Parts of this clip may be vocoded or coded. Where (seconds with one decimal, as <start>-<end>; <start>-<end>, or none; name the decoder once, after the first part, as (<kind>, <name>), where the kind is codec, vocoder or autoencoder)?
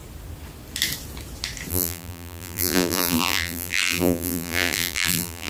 1.7-5.5 (vocoder, BigVGAN v2)